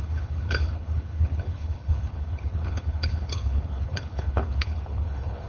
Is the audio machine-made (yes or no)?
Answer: yes